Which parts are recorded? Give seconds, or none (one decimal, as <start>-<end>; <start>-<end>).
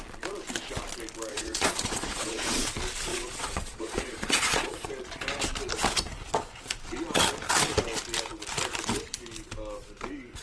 0.0-1.3; 2.6-3.1; 4.9-10.4